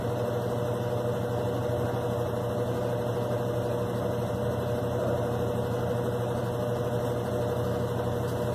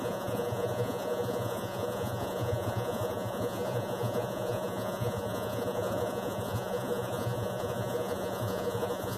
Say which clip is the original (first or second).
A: first